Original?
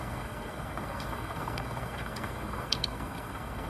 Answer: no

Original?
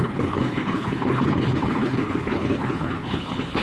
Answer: no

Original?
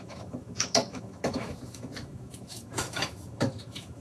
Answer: no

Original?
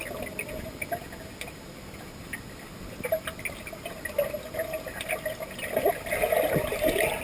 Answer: yes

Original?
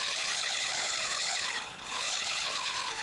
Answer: no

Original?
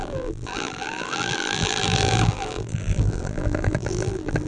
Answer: no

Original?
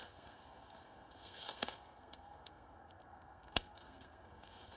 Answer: no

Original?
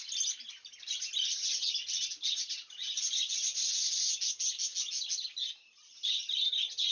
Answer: yes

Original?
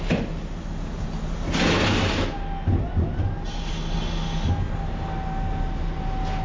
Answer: yes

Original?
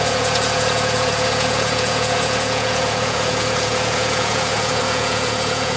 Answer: no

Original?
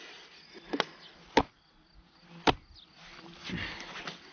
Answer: yes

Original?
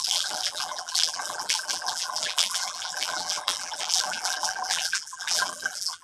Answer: no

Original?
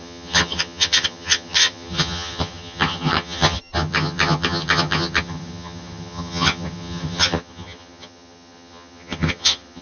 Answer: no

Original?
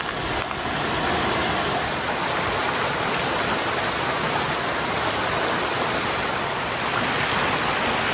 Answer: yes